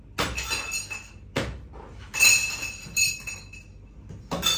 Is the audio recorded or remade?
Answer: recorded